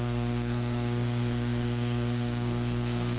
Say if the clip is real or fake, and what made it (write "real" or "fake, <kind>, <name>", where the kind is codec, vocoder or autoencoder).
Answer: fake, codec, SNAC